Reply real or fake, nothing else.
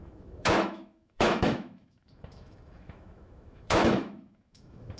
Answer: fake